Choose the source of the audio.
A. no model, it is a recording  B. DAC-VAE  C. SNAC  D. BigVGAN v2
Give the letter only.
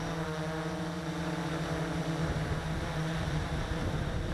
D